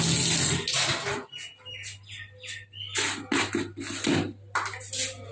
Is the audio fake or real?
real